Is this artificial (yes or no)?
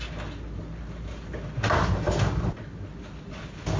no